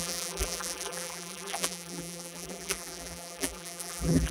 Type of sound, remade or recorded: remade